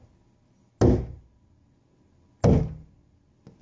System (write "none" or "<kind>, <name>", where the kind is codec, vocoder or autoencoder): none